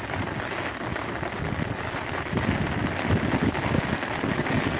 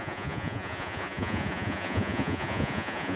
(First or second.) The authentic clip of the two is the first